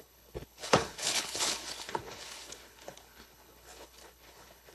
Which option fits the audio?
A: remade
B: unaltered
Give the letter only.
A